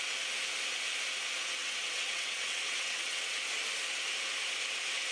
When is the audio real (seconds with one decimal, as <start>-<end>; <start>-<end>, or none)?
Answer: 0.0-1.6; 3.3-5.1

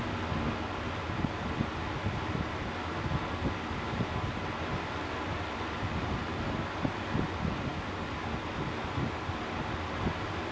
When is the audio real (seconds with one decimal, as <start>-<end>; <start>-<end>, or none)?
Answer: 0.0-10.5